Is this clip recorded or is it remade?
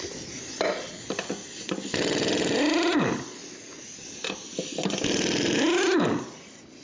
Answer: recorded